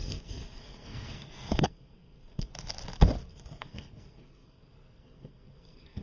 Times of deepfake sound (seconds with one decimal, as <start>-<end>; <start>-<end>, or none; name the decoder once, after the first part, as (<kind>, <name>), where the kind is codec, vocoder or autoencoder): 0.0-2.5 (codec, SNAC); 3.3-6.0